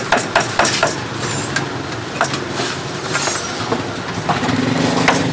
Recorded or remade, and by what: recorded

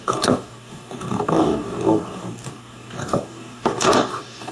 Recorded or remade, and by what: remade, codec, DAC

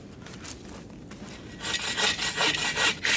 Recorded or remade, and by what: recorded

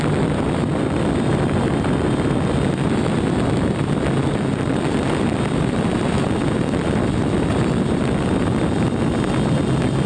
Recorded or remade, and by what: recorded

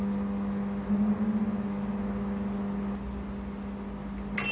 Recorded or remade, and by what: recorded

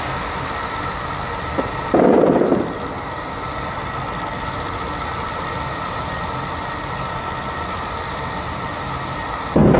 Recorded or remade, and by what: recorded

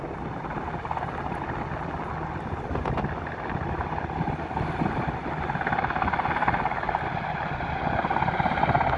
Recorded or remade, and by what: recorded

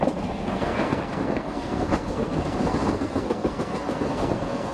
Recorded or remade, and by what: remade, codec, SNAC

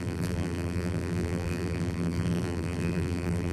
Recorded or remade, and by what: remade, vocoder, BigVGAN v2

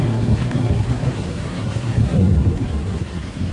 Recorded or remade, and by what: remade, codec, SNAC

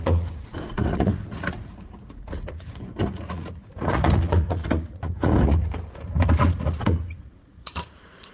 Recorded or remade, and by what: remade, vocoder, Vocos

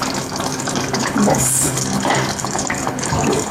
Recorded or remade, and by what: remade, codec, DAC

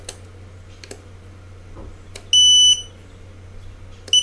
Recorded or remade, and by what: recorded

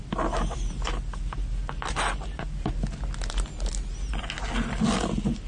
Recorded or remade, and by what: recorded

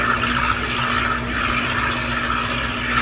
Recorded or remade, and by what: recorded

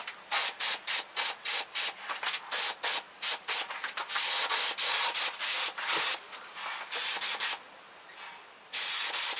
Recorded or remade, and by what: recorded